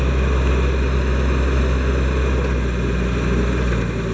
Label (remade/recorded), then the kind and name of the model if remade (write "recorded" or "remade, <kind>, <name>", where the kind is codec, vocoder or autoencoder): recorded